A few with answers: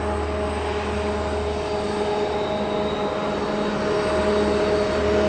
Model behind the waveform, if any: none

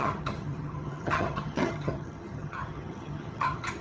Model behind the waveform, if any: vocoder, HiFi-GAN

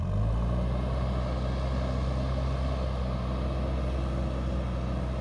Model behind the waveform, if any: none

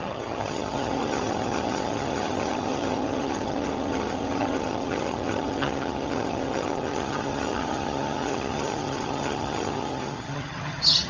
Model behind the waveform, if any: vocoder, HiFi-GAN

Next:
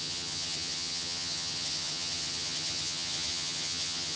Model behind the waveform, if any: vocoder, HiFi-GAN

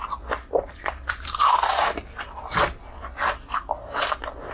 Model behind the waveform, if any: vocoder, BigVGAN v2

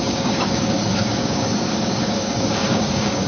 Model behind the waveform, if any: codec, DAC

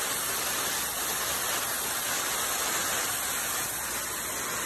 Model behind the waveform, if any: none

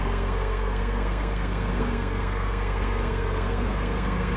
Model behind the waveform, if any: codec, SNAC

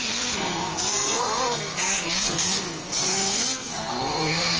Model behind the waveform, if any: codec, SNAC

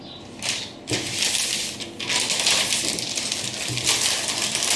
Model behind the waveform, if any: none